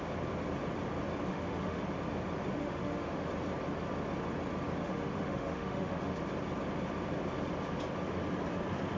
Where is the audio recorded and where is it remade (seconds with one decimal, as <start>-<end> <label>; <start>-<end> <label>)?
0.0-1.3 recorded; 1.3-1.8 remade; 1.8-2.6 recorded; 2.6-3.3 remade; 3.3-4.8 recorded; 4.8-6.2 remade; 6.2-9.0 recorded